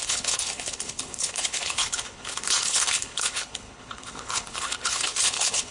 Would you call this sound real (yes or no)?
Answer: no